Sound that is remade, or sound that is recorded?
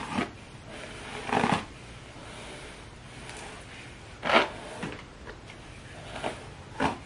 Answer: recorded